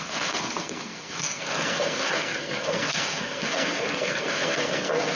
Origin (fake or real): fake